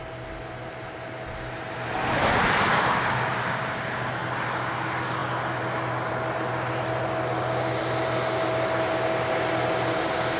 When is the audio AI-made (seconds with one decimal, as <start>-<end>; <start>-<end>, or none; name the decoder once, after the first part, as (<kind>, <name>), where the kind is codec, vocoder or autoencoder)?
2.7-3.6 (codec, DAC)